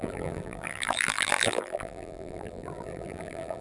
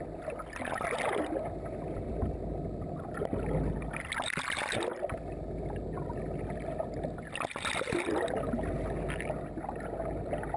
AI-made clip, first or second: first